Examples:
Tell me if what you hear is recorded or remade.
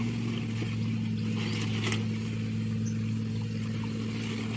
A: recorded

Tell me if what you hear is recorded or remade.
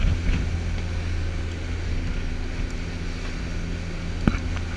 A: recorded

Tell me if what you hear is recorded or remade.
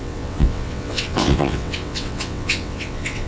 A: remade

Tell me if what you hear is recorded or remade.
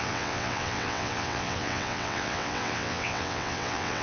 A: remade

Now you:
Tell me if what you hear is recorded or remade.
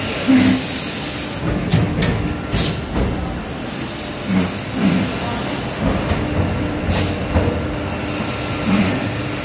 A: recorded